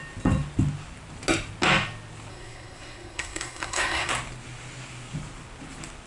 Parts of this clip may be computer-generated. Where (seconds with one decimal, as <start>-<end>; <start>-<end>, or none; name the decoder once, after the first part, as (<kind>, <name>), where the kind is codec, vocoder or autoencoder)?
2.3-4.1 (codec, SNAC)